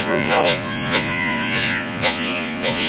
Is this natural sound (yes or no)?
no